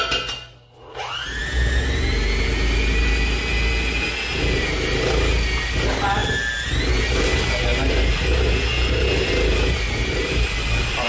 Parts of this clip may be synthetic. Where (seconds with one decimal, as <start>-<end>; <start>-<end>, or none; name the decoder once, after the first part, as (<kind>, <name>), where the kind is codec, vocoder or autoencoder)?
none